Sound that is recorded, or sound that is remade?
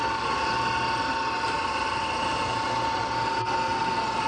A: recorded